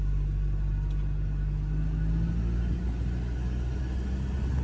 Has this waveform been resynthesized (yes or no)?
no